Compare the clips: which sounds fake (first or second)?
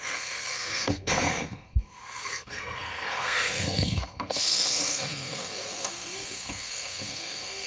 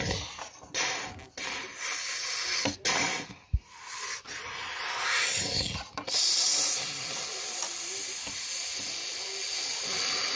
first